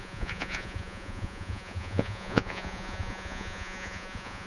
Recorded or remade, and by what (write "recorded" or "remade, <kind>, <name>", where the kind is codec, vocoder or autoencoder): remade, vocoder, Vocos